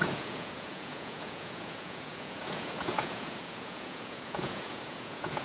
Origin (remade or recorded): remade